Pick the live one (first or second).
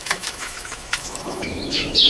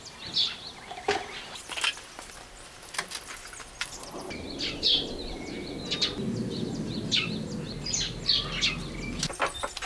second